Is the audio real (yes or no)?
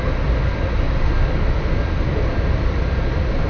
yes